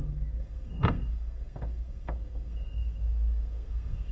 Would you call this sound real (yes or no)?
no